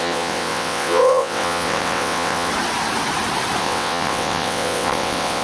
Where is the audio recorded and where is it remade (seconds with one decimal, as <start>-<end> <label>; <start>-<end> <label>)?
0.0-2.5 remade; 2.5-3.6 recorded; 3.6-5.4 remade